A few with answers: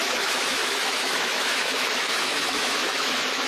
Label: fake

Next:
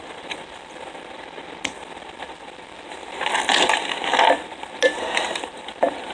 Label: real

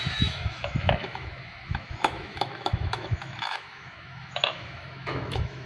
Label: fake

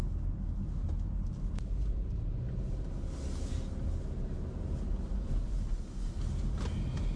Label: real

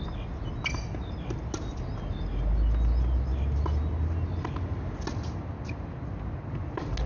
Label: real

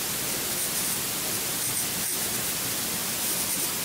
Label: real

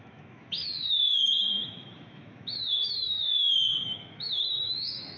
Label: fake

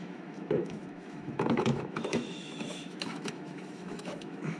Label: fake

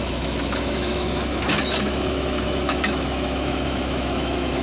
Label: fake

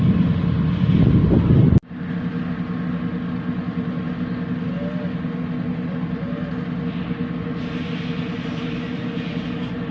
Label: real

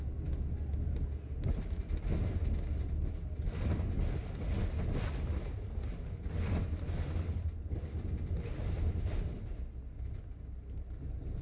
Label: real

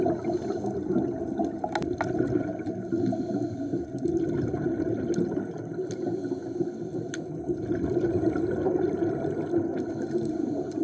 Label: real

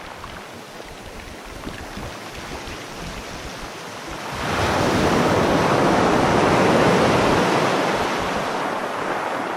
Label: real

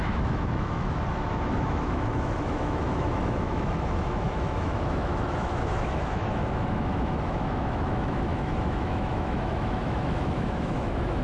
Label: fake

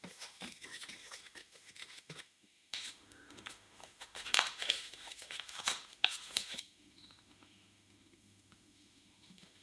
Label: fake